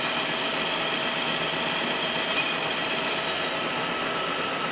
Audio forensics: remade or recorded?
recorded